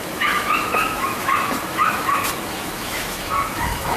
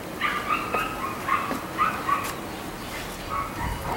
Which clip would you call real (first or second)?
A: second